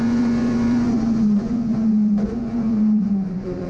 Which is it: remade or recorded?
remade